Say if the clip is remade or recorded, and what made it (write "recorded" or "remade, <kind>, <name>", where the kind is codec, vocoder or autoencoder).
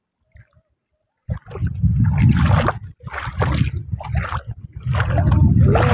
recorded